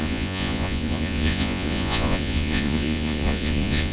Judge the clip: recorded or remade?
remade